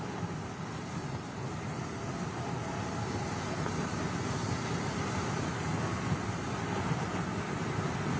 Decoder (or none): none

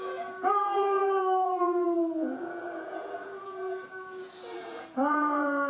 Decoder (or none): vocoder, Vocos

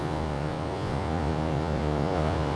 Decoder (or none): vocoder, Vocos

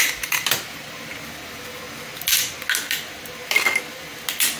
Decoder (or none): none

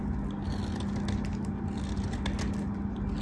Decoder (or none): none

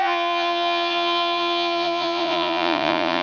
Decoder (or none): vocoder, Vocos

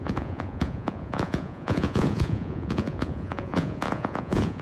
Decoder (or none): vocoder, Vocos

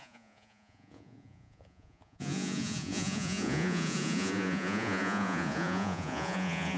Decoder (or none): vocoder, Vocos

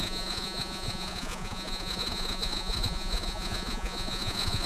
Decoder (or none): vocoder, Vocos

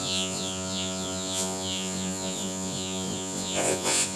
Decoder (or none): vocoder, Vocos